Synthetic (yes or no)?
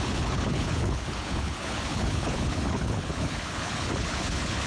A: yes